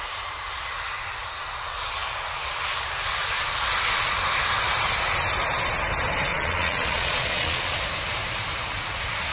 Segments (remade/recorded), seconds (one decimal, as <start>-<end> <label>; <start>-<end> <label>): 0.0-6.3 recorded; 6.3-7.8 remade; 7.8-9.3 recorded